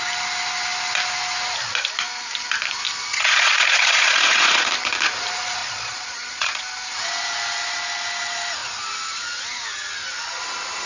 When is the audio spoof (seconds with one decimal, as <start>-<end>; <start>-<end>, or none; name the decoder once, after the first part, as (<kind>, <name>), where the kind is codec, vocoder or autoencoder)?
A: 3.1-4.7 (vocoder, Vocos); 5.6-6.6